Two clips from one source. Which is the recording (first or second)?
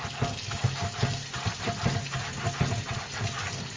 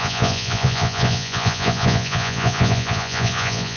first